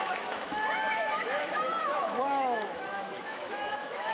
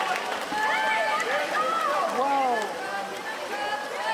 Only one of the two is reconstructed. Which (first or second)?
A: first